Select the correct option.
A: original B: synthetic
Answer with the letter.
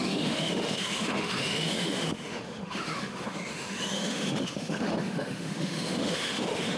B